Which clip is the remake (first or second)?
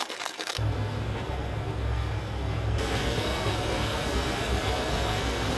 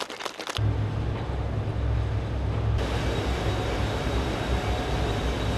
first